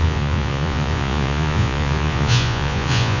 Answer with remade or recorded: remade